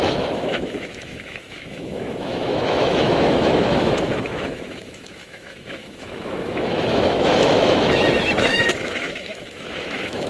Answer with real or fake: fake